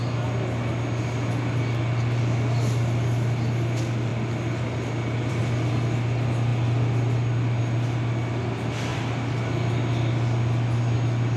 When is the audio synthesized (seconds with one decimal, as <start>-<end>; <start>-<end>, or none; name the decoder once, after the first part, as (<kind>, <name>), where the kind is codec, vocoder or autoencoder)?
none